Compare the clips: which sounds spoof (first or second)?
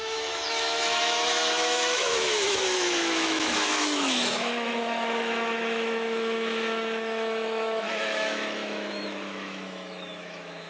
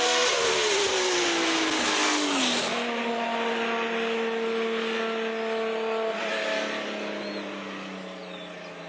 first